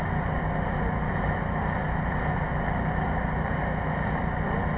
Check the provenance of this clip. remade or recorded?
recorded